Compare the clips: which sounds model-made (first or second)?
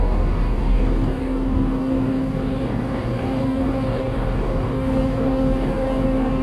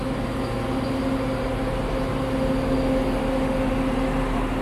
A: first